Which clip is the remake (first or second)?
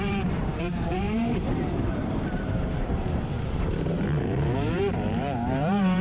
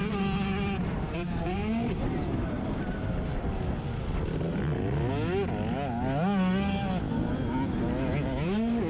first